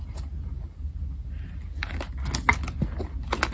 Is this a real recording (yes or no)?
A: yes